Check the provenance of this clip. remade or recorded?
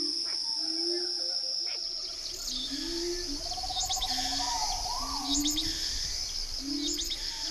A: recorded